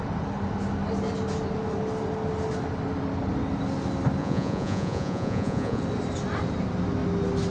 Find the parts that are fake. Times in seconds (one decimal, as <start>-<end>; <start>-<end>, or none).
4.2-5.8